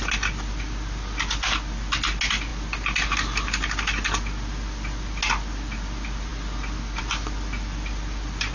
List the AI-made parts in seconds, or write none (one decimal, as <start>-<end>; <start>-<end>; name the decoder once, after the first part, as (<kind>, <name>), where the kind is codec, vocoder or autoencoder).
none